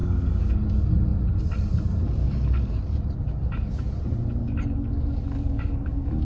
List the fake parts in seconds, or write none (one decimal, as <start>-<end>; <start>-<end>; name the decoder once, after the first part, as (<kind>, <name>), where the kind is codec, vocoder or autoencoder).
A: 0.0-0.5 (codec, DAC); 2.2-2.7; 4.4-6.2